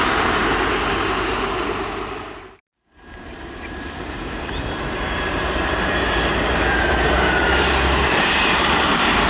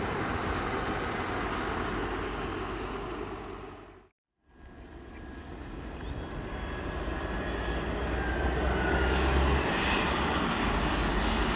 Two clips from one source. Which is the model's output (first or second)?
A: first